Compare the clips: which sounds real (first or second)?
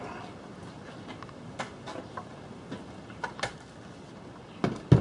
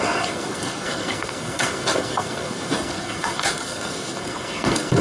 first